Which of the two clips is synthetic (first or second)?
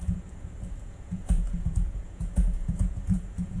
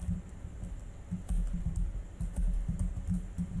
first